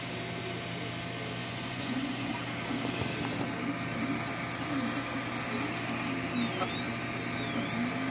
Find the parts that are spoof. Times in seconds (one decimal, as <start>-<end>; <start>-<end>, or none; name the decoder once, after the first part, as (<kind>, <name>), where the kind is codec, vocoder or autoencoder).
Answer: 1.4-2.3 (vocoder, Vocos)